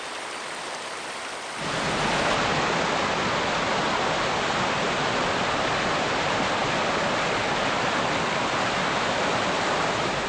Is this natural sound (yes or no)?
yes